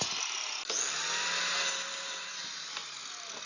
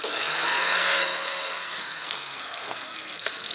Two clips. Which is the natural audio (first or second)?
first